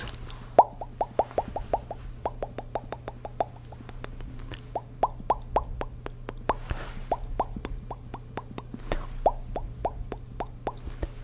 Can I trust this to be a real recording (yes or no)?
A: yes